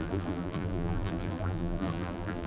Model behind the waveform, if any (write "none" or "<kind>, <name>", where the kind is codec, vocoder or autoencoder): vocoder, BigVGAN v2